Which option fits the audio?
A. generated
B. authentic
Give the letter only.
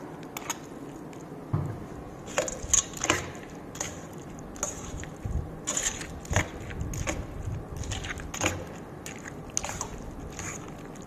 B